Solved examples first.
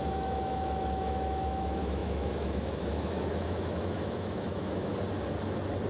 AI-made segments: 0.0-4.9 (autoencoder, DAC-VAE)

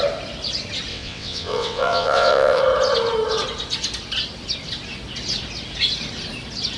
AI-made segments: 0.9-2.6 (vocoder, WaveNeXt)

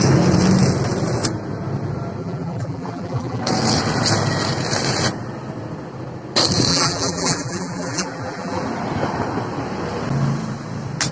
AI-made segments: 2.2-3.4 (vocoder, BigVGAN v2); 6.7-8.6

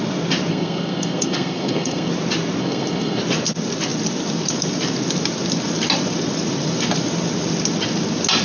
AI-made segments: 0.5-2.1 (codec, SNAC); 2.6-3.2

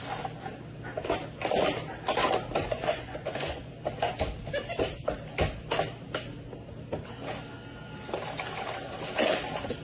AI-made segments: 2.6-3.7 (vocoder, Vocos)

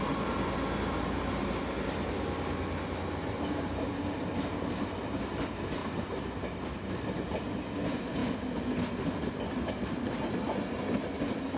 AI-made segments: none

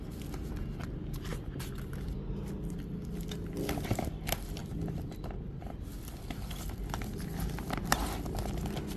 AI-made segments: none